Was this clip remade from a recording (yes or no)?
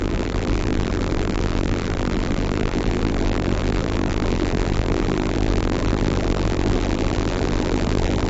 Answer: yes